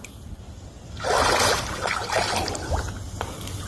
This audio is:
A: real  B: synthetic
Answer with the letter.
A